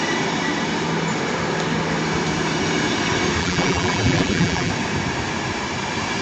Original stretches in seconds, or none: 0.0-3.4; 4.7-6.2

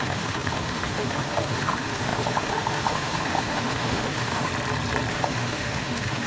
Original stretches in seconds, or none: 4.5-5.1

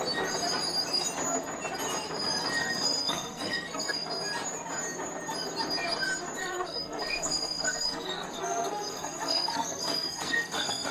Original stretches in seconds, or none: 0.0-2.6; 4.1-6.4

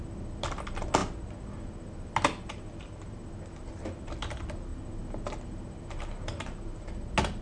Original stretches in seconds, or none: 0.0-7.4

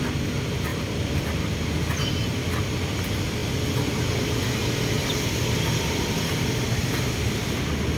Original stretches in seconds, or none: 0.0-8.0

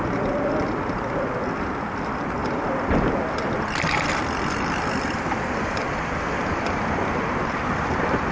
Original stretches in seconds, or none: none